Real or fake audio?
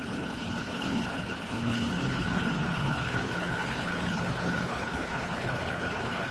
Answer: fake